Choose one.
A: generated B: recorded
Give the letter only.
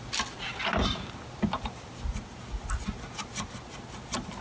B